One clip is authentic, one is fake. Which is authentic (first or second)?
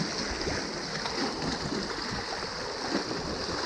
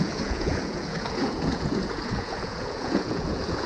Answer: first